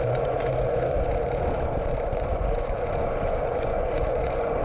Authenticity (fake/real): fake